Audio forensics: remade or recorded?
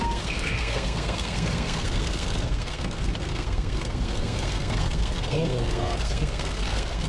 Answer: remade